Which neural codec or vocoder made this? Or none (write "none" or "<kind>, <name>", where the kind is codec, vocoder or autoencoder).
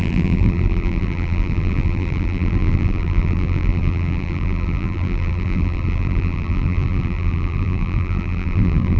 vocoder, BigVGAN v2